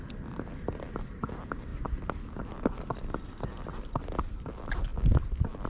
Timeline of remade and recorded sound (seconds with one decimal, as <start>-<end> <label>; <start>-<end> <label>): 0.0-1.7 remade; 1.7-2.9 recorded; 2.9-4.9 remade; 4.9-5.7 recorded